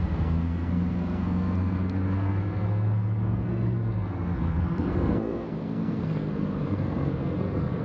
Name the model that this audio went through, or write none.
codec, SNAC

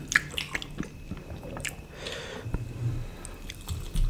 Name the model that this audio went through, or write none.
none